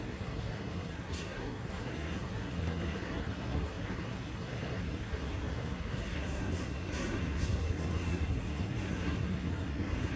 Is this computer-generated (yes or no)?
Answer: yes